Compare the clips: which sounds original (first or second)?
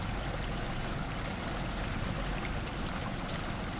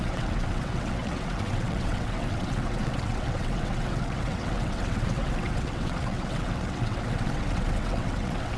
first